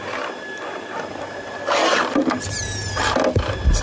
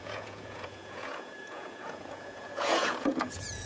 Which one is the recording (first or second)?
first